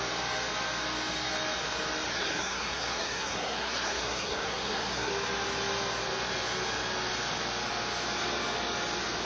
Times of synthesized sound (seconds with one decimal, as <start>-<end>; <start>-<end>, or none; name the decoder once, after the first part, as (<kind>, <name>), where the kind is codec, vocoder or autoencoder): 2.1-5.1 (codec, SNAC)